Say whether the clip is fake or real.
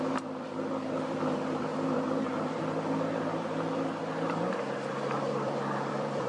fake